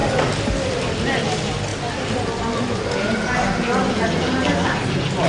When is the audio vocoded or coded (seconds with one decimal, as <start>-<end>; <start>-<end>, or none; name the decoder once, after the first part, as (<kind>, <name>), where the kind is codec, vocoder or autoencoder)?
none